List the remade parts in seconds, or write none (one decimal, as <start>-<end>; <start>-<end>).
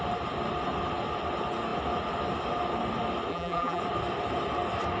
3.3-3.8